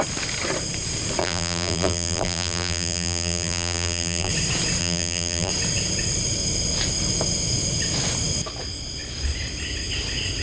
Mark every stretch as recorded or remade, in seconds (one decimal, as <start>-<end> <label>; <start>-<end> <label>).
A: 0.0-1.2 recorded; 1.2-4.3 remade; 4.3-4.8 recorded; 4.8-5.5 remade; 5.5-10.4 recorded